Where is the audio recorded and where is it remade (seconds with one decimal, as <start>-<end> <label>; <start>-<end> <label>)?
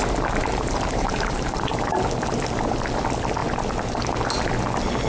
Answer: 0.0-0.5 recorded; 0.5-2.6 remade; 2.6-5.1 recorded